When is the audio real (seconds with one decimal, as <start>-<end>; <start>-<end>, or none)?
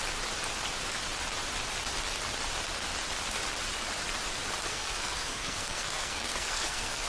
0.0-4.7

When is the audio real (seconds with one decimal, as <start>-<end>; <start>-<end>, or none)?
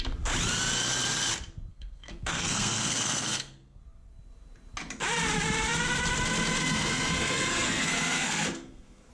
0.0-1.7; 3.8-6.6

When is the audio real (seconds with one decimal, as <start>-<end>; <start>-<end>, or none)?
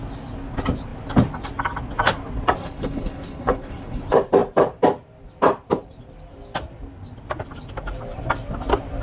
0.0-2.6; 4.0-9.0